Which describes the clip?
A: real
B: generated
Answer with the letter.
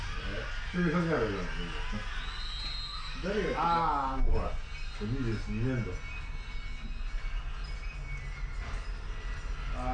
A